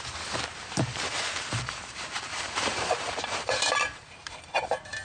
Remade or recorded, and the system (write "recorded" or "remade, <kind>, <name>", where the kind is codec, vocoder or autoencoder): remade, vocoder, BigVGAN v2